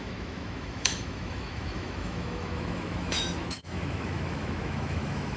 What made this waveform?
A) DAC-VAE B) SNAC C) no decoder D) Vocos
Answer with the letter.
A